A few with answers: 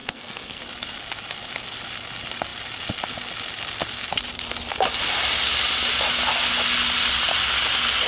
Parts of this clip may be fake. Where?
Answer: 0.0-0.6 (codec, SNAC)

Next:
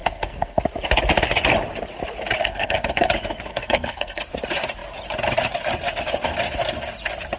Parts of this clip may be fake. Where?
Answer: 0.0-0.6 (codec, SNAC); 2.4-3.1; 3.5-4.2

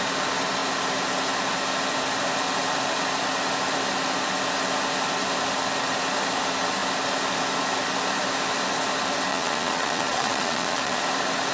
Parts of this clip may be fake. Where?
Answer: 9.3-11.0 (vocoder, Vocos)

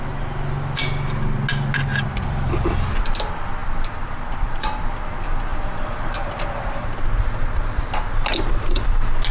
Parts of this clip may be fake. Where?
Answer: 1.9-3.0 (vocoder, BigVGAN v2); 3.6-4.8; 5.5-7.8

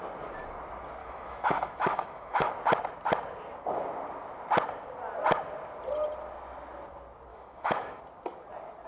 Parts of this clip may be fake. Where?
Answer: 1.0-2.5 (autoencoder, DAC-VAE); 7.3-8.0

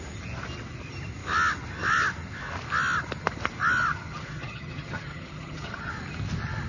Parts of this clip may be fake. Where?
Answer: 3.9-5.9 (vocoder, HiFi-GAN)

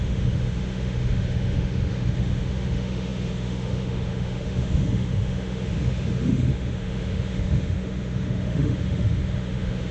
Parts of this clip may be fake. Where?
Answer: 0.0-9.9 (autoencoder, DAC-VAE)

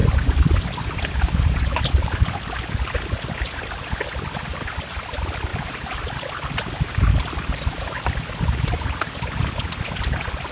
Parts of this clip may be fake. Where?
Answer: none